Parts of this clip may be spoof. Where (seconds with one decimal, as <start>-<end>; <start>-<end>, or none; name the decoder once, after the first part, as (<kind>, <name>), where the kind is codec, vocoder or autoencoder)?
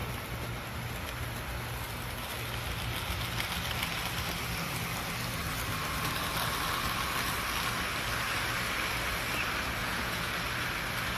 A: 9.8-10.3 (vocoder, Vocos)